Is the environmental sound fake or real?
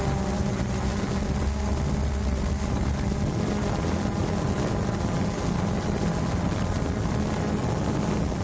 real